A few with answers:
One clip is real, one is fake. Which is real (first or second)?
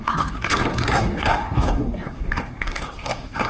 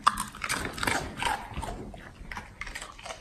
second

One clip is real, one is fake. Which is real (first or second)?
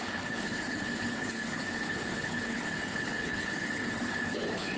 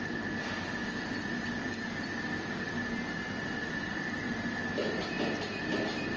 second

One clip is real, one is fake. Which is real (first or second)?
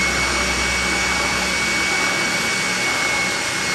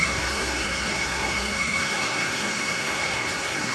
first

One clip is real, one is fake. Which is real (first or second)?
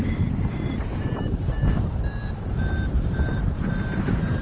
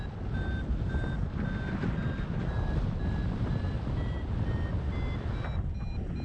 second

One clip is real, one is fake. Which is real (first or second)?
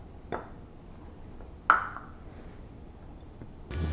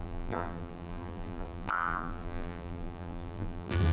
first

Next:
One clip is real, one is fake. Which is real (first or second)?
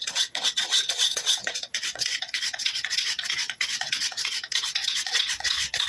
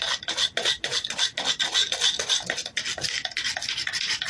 second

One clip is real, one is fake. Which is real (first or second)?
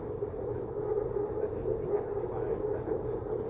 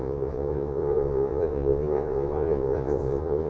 first